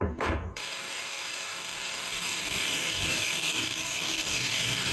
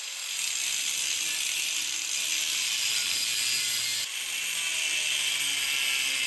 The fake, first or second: first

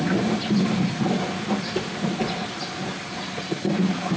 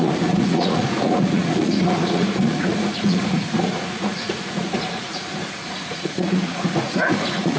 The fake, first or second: second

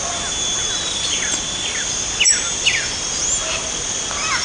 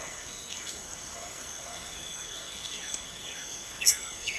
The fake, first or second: second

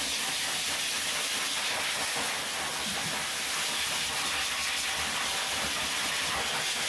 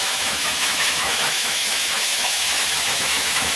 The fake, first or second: second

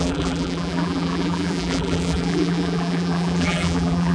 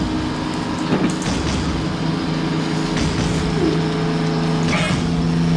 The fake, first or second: first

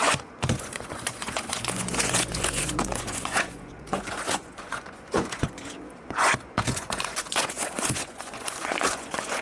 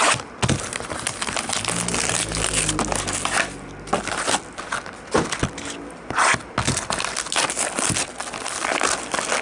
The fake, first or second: first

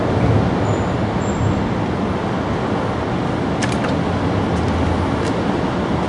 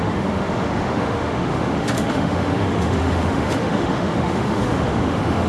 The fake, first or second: second